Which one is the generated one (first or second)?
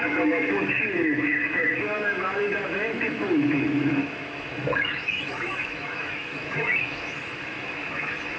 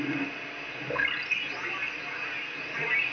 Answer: first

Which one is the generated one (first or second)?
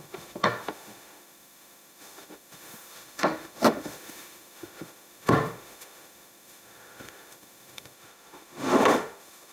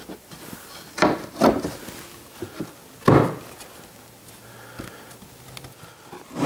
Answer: first